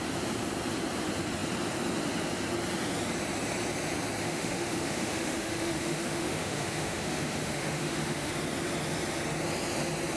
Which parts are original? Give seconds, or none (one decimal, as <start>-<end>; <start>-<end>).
0.0-4.2; 8.3-10.2